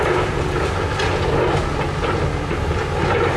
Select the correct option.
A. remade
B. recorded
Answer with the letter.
B